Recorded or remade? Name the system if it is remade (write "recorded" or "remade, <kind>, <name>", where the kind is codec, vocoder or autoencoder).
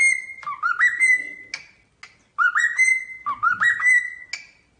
recorded